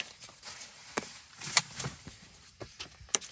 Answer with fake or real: fake